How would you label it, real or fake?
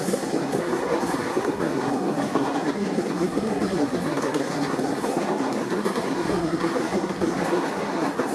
fake